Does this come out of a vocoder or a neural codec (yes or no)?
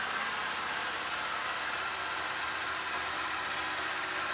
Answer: no